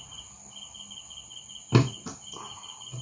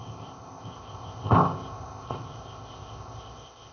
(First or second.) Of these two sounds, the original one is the first